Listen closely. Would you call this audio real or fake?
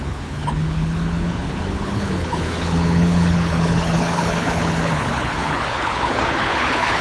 fake